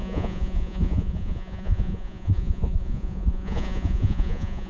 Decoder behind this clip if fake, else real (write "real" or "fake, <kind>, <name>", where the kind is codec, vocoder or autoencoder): fake, vocoder, Vocos